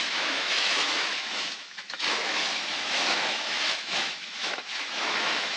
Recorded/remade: remade